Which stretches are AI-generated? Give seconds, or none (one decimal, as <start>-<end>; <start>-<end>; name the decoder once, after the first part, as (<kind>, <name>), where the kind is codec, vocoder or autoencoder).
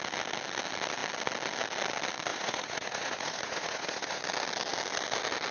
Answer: 2.3-4.2 (vocoder, Vocos)